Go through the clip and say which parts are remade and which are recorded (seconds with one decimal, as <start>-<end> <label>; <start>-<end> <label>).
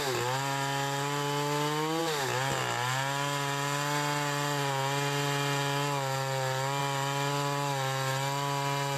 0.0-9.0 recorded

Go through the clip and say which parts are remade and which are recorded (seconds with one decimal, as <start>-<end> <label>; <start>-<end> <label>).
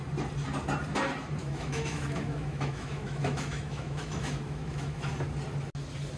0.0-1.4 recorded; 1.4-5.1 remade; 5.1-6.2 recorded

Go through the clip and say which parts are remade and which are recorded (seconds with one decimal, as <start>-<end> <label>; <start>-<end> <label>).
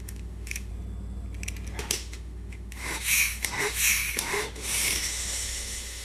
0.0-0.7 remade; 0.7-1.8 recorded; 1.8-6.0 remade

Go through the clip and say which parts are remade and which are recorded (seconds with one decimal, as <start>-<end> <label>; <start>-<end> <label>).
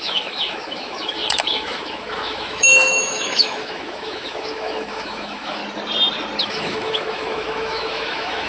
0.0-5.6 remade; 5.6-6.4 recorded; 6.4-8.5 remade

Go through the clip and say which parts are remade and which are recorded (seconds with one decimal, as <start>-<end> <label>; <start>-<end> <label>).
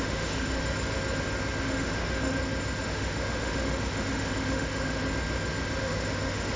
0.0-0.6 remade; 0.6-1.6 recorded; 1.6-2.4 remade; 2.4-2.9 recorded; 2.9-5.0 remade; 5.0-5.8 recorded; 5.8-6.6 remade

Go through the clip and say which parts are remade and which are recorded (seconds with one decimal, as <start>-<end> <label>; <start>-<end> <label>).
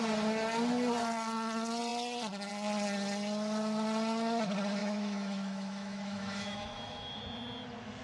0.0-4.8 recorded; 4.8-7.2 remade; 7.2-8.0 recorded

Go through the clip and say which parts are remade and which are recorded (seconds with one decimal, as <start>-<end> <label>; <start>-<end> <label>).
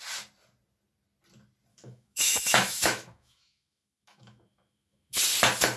0.0-1.7 recorded; 1.7-5.2 remade; 5.2-5.8 recorded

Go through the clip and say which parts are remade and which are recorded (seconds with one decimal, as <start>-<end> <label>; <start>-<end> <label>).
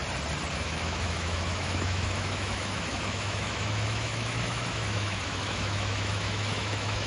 0.0-0.5 recorded; 0.5-7.1 remade